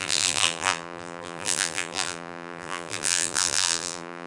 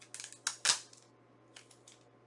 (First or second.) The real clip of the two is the second